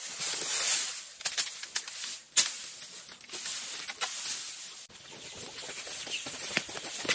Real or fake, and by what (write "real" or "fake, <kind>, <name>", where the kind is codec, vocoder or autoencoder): real